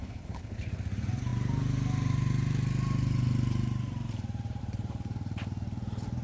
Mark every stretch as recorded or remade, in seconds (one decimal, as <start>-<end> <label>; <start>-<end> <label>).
0.0-0.7 remade; 0.7-6.2 recorded

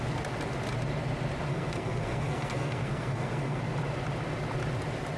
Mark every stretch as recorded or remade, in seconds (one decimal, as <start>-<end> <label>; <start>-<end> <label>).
0.0-1.5 recorded; 1.5-3.6 remade; 3.6-5.2 recorded

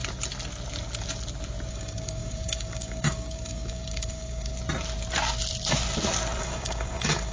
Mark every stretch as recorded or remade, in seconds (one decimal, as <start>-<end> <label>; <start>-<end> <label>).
0.0-1.7 recorded; 1.7-4.5 remade; 4.5-6.4 recorded; 6.4-7.3 remade

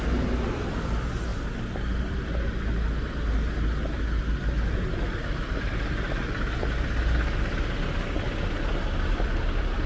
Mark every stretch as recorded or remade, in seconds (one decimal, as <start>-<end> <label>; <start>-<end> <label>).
0.0-9.9 recorded